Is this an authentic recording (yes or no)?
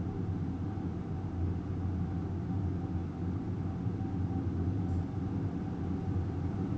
yes